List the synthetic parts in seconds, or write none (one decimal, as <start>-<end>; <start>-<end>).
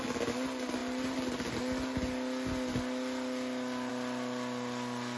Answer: none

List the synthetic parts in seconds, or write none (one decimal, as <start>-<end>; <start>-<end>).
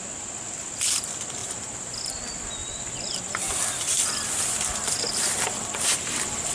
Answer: 1.4-2.1; 2.6-6.5